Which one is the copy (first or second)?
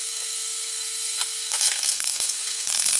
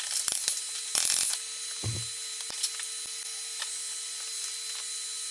first